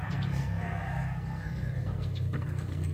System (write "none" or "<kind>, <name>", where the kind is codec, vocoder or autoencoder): codec, SNAC